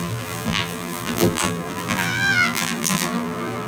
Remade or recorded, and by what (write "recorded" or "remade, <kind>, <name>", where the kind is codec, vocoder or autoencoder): remade, vocoder, BigVGAN v2